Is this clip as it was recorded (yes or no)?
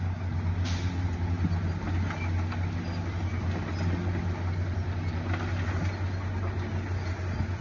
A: yes